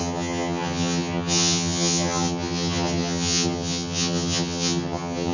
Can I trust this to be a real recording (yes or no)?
no